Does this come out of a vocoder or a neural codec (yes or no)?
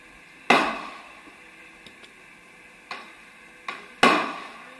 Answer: no